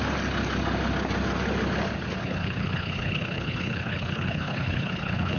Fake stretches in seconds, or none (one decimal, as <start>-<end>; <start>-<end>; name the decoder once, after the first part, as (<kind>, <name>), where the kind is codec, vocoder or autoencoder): 2.2-5.4 (codec, HILCodec)